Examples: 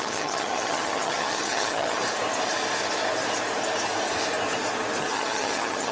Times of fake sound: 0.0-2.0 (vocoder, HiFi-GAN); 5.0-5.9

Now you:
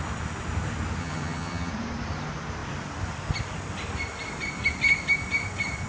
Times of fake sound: 1.0-1.7 (vocoder, HiFi-GAN)

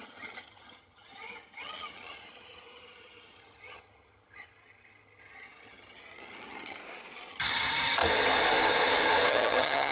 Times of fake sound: 0.0-6.8 (vocoder, HiFi-GAN); 7.3-8.0; 9.3-9.9

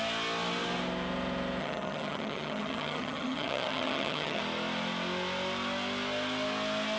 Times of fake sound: 1.6-4.4 (vocoder, HiFi-GAN)

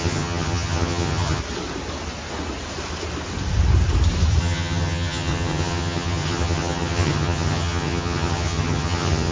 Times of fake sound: 0.0-1.4 (vocoder, HiFi-GAN); 4.4-9.3